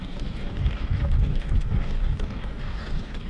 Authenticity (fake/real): fake